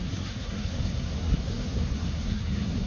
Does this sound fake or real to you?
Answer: fake